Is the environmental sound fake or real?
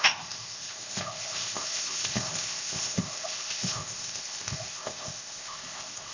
fake